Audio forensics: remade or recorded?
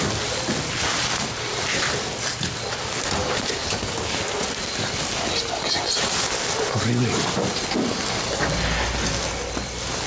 recorded